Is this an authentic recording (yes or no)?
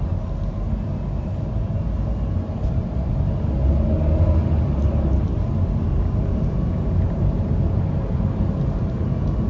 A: yes